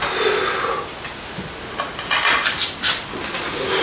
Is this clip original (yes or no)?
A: yes